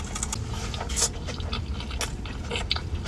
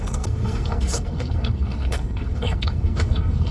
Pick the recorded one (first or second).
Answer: first